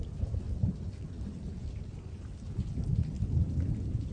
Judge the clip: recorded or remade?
recorded